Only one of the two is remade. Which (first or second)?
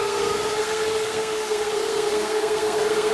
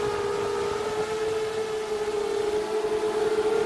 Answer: first